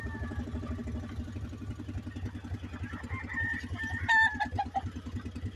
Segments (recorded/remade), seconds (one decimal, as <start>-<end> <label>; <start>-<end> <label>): 0.0-5.6 recorded

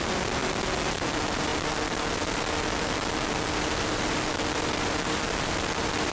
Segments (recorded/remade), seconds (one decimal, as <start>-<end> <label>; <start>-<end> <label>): 0.0-0.4 remade; 0.4-1.1 recorded; 1.1-6.1 remade